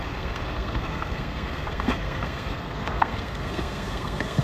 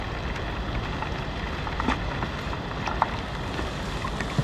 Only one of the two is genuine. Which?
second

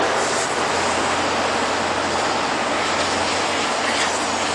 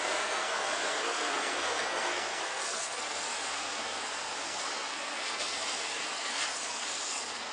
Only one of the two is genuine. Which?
first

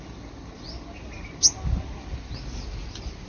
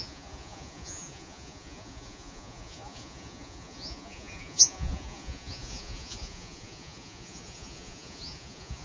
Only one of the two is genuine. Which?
first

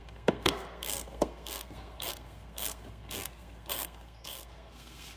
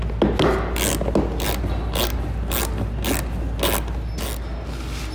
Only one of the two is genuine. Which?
second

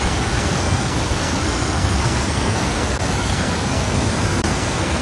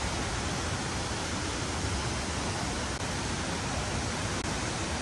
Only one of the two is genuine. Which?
second